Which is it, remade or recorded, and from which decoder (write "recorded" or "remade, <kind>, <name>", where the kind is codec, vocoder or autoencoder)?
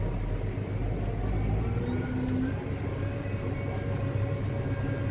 recorded